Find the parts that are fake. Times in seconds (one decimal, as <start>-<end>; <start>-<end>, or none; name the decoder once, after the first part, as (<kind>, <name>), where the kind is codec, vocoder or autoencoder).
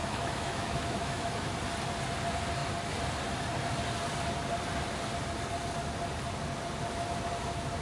0.0-1.5 (autoencoder, DAC-VAE)